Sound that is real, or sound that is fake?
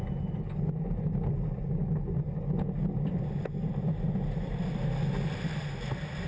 real